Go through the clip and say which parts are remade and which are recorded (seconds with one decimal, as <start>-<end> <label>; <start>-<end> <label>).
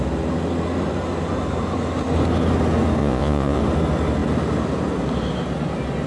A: 0.0-3.0 recorded; 3.0-3.6 remade; 3.6-6.1 recorded